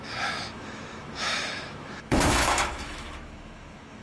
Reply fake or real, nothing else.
fake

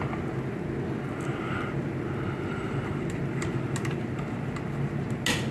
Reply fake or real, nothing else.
real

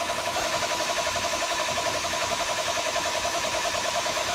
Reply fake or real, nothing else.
fake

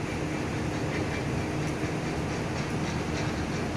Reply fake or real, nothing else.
real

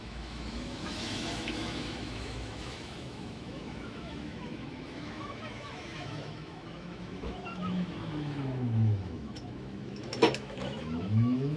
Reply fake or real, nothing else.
fake